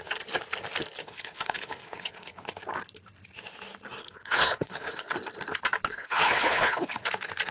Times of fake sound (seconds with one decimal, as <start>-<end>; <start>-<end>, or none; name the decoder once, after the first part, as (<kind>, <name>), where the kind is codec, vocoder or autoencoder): 1.0-2.5 (codec, HILCodec); 4.0-5.1; 5.9-7.1